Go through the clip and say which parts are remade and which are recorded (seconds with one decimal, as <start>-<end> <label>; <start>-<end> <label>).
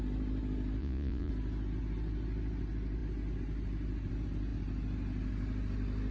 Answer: 0.0-0.8 recorded; 0.8-1.3 remade; 1.3-6.1 recorded